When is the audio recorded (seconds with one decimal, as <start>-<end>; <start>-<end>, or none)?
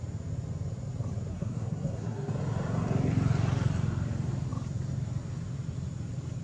0.0-1.3; 2.3-6.4